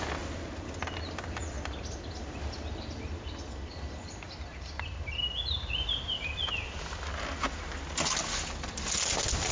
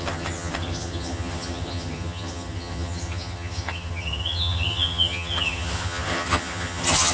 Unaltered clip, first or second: first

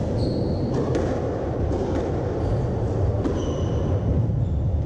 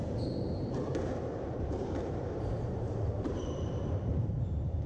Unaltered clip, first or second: first